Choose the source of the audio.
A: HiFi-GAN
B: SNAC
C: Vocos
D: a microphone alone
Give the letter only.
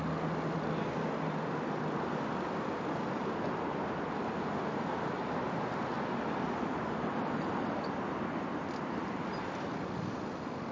D